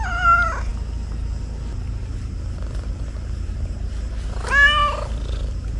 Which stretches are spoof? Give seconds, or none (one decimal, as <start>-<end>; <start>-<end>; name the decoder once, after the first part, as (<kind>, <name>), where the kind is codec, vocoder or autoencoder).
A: none